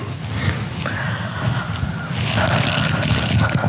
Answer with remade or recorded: recorded